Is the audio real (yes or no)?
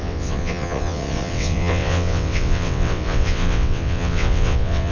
no